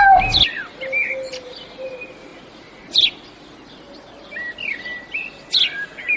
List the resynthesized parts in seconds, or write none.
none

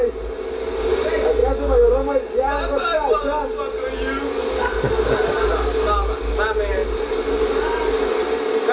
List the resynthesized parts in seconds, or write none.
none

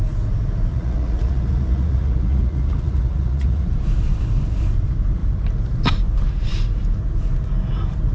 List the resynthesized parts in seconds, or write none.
0.7-3.7

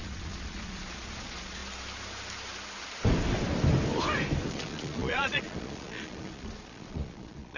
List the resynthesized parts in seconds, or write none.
0.0-1.6; 4.5-7.6

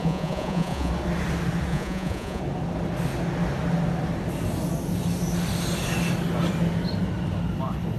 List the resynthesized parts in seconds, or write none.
0.0-0.9; 1.7-2.4

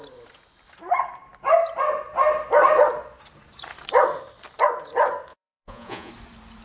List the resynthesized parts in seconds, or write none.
5.3-6.1

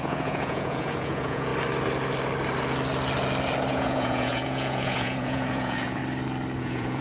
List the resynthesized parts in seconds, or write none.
0.0-1.5; 3.7-6.0; 6.6-7.0